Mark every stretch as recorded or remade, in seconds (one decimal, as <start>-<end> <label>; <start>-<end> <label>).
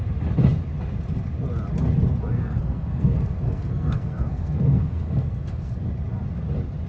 0.0-2.3 recorded; 2.3-5.7 remade; 5.7-6.9 recorded